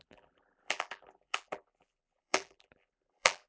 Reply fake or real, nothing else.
fake